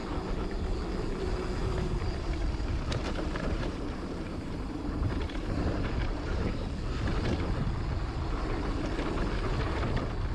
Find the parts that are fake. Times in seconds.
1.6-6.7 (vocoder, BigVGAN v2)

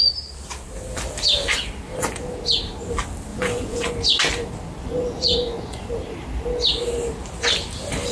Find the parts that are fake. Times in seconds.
3.3-3.9 (vocoder, Vocos); 4.8-5.9

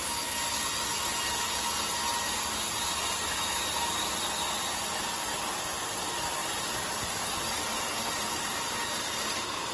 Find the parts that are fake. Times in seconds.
6.4-9.7 (vocoder, BigVGAN v2)

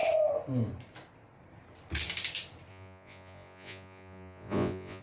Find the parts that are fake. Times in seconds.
2.7-5.0 (vocoder, Vocos)

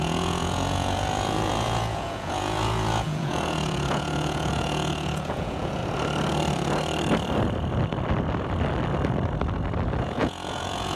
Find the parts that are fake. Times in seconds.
0.0-5.8 (vocoder, Vocos); 10.0-11.0

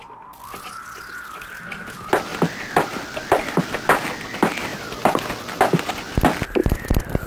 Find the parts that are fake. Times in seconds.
none